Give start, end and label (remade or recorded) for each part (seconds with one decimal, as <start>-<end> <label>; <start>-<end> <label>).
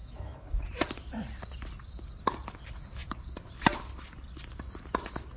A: 0.0-0.6 remade; 0.6-5.4 recorded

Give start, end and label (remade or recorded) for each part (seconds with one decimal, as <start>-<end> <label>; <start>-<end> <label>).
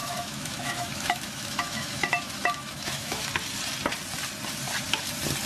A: 0.0-3.3 remade; 3.3-5.5 recorded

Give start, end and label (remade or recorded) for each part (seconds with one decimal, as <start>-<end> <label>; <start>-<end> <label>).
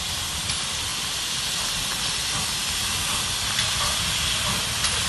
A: 0.0-5.1 recorded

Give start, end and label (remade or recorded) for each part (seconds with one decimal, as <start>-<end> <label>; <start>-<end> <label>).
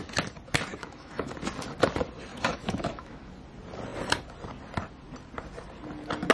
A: 0.0-0.7 recorded; 0.7-1.3 remade; 1.3-2.3 recorded; 2.3-3.3 remade; 3.3-6.3 recorded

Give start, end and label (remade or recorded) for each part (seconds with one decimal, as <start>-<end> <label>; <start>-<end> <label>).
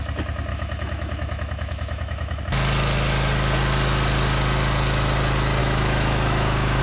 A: 0.0-0.5 recorded; 0.5-2.4 remade; 2.4-5.6 recorded; 5.6-6.8 remade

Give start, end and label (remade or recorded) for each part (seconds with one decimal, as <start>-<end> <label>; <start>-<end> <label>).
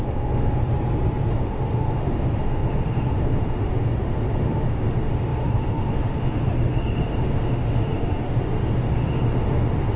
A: 0.0-0.7 remade; 0.7-1.3 recorded; 1.3-10.0 remade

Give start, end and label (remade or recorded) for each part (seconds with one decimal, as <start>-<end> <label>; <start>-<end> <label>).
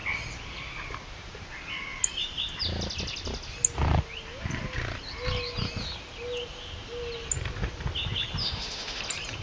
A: 0.0-8.4 recorded; 8.4-9.0 remade; 9.0-9.4 recorded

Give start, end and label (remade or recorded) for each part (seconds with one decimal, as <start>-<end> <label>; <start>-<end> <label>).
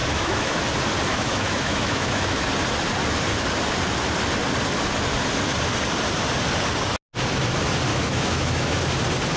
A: 0.0-0.6 remade; 0.6-1.1 recorded; 1.1-2.5 remade; 2.5-7.9 recorded; 7.9-8.8 remade; 8.8-9.4 recorded